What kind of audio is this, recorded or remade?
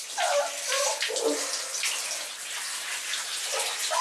recorded